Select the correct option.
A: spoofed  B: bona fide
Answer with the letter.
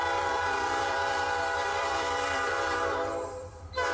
A